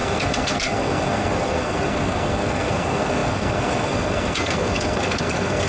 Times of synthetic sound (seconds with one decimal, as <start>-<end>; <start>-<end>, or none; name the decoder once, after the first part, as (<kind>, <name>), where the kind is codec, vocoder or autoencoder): 0.0-5.7 (codec, SNAC)